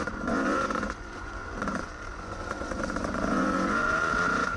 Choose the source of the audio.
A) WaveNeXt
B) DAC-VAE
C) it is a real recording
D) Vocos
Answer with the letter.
D